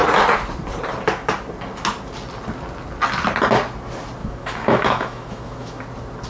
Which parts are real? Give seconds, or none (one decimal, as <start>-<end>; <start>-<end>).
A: 0.0-4.2; 5.8-6.3

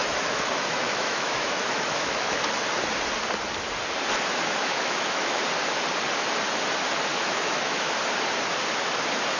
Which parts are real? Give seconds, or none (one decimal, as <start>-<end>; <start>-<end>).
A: 2.4-4.6; 5.4-7.1; 7.9-9.4

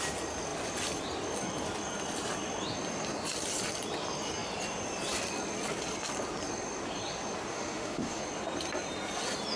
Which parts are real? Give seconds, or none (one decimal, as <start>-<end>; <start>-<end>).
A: 0.0-7.5; 8.2-9.6

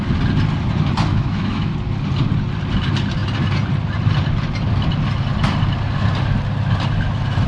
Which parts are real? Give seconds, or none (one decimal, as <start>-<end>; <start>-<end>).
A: 0.0-1.1; 1.7-7.5

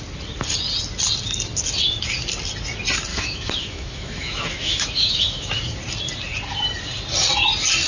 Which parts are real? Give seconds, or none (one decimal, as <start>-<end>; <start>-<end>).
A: 0.0-3.1; 5.5-7.9

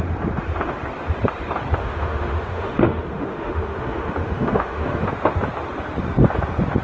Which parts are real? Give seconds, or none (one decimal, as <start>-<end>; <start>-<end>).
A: 0.0-1.8; 5.1-6.8